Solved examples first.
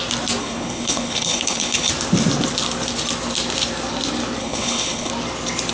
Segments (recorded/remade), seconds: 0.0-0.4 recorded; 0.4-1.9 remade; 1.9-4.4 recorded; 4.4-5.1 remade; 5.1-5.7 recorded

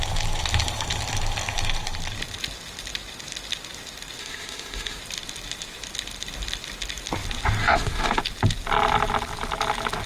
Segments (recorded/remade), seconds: 0.0-4.2 recorded; 4.2-5.0 remade; 5.0-7.6 recorded; 7.6-8.2 remade; 8.2-10.1 recorded

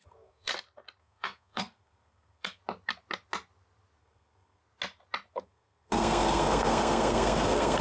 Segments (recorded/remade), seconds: 0.0-0.5 remade; 0.5-1.0 recorded; 1.0-2.6 remade; 2.6-4.0 recorded; 4.0-4.6 remade; 4.6-5.3 recorded; 5.3-7.8 remade

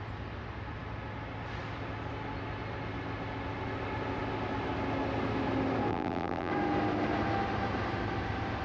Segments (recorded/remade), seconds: 0.0-5.9 recorded; 5.9-6.5 remade; 6.5-8.6 recorded

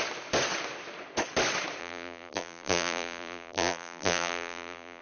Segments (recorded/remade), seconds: 0.0-1.8 recorded; 1.8-5.0 remade

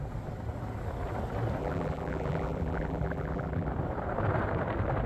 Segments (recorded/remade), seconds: 0.0-1.6 recorded; 1.6-3.7 remade; 3.7-5.1 recorded

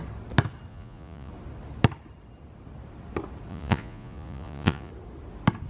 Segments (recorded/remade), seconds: 0.0-0.7 recorded; 0.7-1.3 remade; 1.3-3.5 recorded; 3.5-4.9 remade; 4.9-5.7 recorded